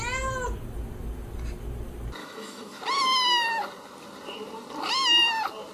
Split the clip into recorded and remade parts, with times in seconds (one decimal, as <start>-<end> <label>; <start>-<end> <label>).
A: 0.0-2.2 recorded; 2.2-2.8 remade; 2.8-5.7 recorded